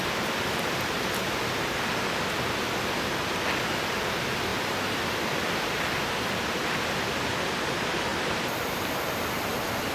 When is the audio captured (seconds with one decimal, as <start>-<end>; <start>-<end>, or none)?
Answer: 0.0-9.9